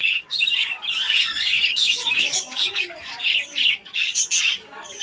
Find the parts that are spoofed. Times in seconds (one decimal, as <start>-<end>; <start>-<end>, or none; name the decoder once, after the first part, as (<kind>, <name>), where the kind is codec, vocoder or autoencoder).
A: 0.0-5.0 (codec, DAC)